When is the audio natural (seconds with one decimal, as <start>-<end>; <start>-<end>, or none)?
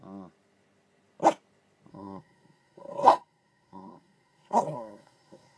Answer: 0.0-1.9